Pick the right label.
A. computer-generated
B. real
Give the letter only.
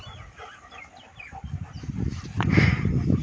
B